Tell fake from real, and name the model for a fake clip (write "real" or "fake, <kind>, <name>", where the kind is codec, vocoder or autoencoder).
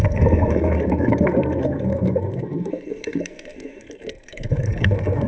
fake, codec, SNAC